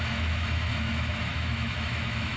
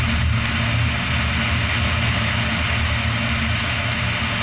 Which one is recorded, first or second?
second